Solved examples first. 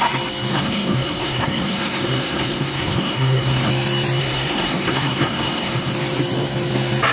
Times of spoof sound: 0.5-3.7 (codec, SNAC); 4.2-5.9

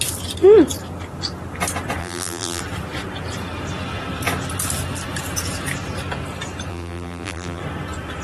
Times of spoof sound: 2.0-2.6 (vocoder, BigVGAN v2); 6.7-7.6